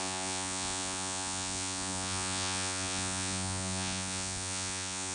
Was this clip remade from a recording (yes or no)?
yes